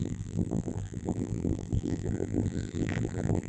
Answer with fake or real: fake